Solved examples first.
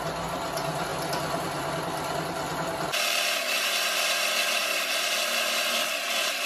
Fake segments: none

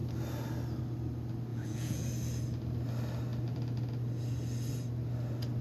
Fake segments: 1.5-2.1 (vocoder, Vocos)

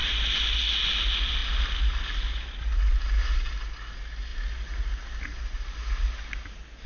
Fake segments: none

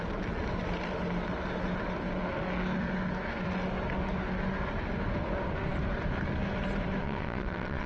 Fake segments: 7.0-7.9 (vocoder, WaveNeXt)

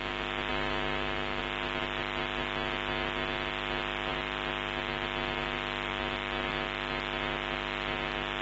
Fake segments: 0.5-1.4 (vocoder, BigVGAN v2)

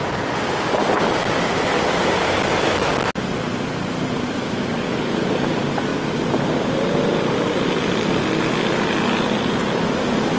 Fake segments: none

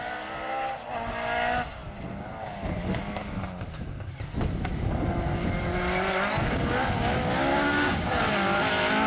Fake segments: 7.5-8.2 (codec, DAC)